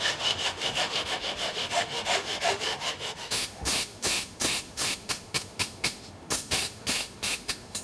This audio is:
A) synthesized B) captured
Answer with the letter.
A